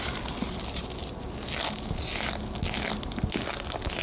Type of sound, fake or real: real